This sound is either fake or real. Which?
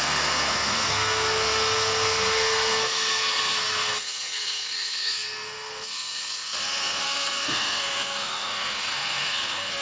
fake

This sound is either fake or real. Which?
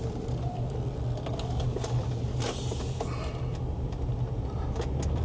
real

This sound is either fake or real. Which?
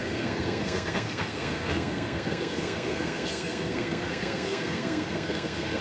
fake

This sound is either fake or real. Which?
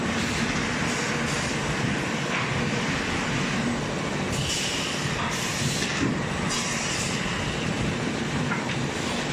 real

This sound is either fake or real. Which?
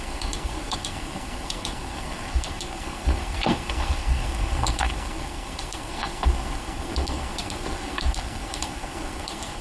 fake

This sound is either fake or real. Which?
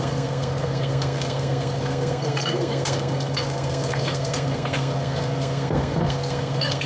fake